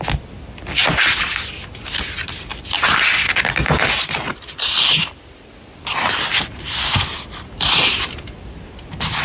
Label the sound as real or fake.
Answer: real